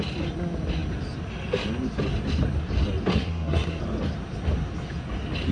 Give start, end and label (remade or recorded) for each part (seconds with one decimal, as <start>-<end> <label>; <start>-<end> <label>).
0.0-3.1 recorded; 3.1-3.8 remade; 3.8-5.5 recorded